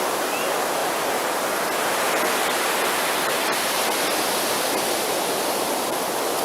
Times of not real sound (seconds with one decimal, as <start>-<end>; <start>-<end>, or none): none